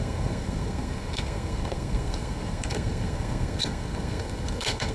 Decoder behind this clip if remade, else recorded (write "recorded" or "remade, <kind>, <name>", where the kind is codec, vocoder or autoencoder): remade, codec, SNAC